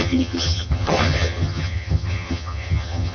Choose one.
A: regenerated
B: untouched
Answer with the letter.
A